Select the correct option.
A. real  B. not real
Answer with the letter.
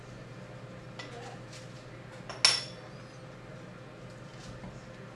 A